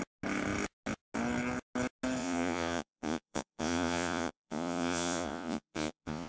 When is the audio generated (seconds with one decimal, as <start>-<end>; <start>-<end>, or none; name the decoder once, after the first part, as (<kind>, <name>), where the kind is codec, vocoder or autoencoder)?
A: 2.2-6.3 (vocoder, Vocos)